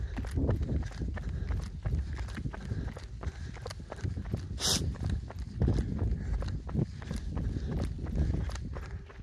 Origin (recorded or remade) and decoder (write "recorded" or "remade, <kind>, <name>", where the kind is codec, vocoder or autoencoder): recorded